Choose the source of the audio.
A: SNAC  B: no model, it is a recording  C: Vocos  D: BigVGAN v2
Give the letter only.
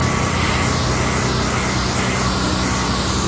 B